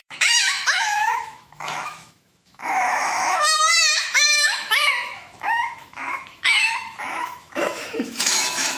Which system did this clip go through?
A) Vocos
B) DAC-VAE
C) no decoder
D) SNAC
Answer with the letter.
B